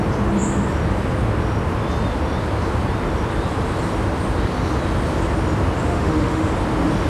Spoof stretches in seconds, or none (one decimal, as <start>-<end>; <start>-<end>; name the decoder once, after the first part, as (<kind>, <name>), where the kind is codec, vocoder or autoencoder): 5.9-6.5 (autoencoder, DAC-VAE)